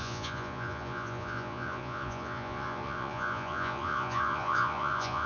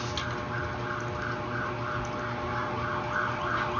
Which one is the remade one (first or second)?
first